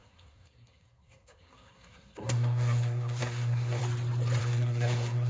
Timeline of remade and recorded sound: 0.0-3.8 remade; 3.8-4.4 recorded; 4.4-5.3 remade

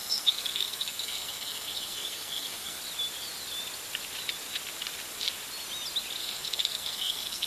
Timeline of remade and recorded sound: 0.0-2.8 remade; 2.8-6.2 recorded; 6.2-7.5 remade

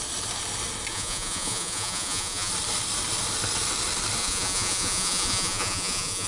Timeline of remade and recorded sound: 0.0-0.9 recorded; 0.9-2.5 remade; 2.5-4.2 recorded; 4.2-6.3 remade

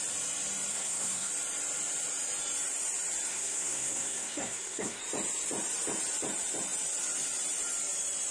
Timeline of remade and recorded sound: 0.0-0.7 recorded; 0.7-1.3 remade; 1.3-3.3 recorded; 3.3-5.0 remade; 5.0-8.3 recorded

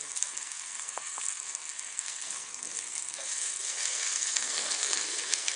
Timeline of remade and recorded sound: 0.0-5.6 remade